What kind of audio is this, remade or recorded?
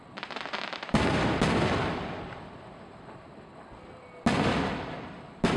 recorded